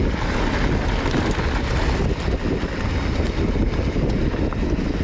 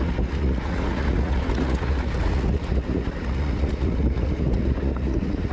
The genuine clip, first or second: first